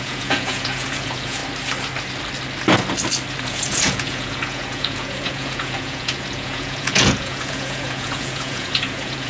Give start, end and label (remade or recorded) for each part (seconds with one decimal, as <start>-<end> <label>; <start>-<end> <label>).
0.0-1.4 remade; 1.4-3.4 recorded; 3.4-9.3 remade